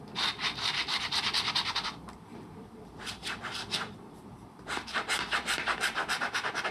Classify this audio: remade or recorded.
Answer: remade